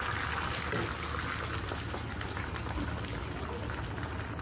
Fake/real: real